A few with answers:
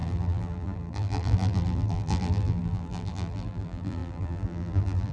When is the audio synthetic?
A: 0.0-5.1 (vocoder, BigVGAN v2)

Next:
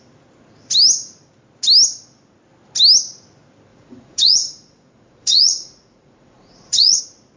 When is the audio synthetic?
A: 3.7-7.0 (vocoder, Vocos)